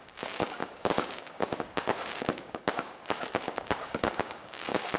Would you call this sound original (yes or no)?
no